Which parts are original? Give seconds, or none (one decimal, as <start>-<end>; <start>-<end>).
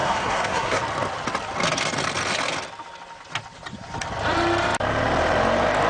0.8-5.9